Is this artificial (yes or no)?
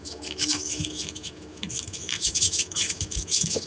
yes